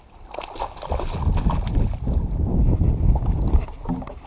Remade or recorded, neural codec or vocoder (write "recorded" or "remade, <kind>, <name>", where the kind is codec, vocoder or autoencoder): recorded